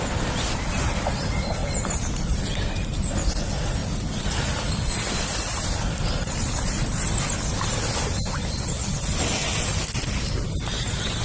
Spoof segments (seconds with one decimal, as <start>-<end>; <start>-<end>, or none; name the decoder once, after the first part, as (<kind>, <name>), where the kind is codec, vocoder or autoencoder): 1.6-2.4 (vocoder, BigVGAN v2)